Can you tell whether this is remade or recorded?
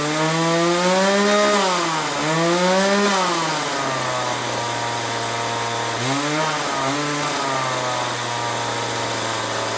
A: recorded